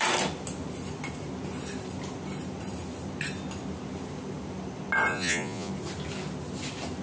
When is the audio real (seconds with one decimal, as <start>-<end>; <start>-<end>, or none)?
0.0-5.1; 5.7-7.0